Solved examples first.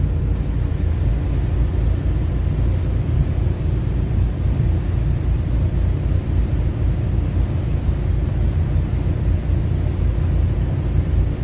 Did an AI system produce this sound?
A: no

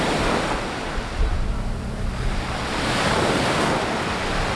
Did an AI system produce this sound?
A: no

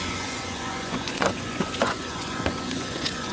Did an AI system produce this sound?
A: yes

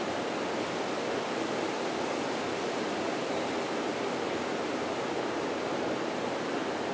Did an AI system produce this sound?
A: no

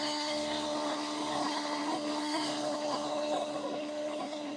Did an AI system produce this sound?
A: yes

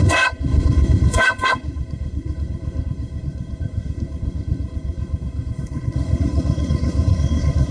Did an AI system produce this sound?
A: yes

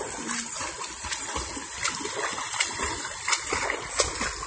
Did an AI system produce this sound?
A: no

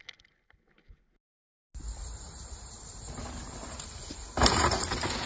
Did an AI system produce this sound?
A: no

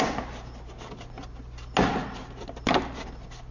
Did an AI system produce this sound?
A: no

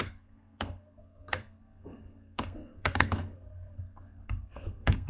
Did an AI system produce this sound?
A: yes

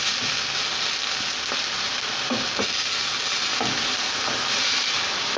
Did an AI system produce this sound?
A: no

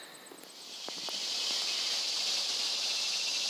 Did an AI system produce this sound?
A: no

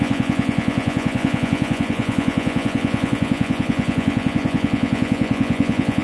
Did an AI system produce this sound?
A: yes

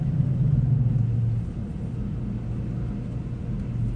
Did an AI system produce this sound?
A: no